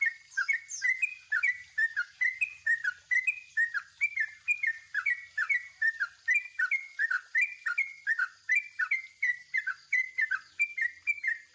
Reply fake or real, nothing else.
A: real